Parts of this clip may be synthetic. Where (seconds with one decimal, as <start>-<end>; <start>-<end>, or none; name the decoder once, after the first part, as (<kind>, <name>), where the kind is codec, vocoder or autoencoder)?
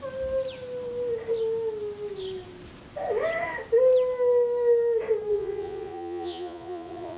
5.3-7.2 (vocoder, Vocos)